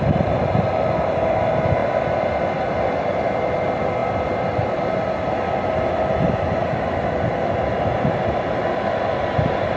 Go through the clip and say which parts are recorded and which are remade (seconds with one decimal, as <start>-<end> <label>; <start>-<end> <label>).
0.0-9.8 recorded